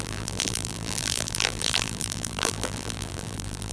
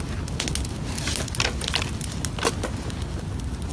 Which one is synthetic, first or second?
first